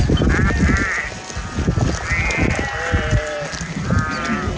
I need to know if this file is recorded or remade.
recorded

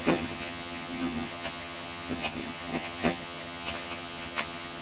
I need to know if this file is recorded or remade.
remade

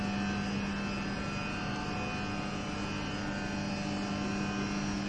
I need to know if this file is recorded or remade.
recorded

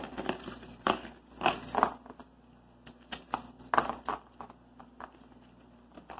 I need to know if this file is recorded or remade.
recorded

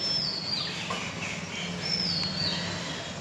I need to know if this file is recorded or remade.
recorded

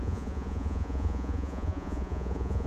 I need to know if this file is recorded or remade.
remade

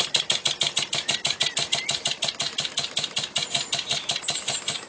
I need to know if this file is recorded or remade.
recorded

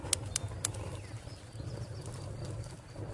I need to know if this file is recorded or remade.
recorded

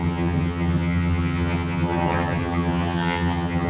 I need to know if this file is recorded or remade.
remade